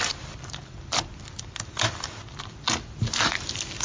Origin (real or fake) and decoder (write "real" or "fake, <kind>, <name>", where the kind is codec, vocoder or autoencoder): real